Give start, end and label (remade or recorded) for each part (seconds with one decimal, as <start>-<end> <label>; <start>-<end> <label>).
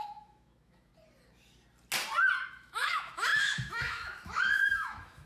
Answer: 0.0-0.9 remade; 0.9-2.5 recorded; 2.5-5.3 remade